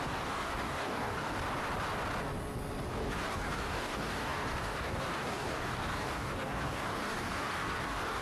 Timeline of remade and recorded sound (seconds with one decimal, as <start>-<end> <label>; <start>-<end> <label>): 0.0-1.3 remade; 1.3-2.9 recorded; 2.9-8.2 remade